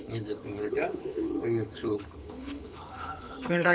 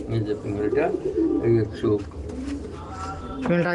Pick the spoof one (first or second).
first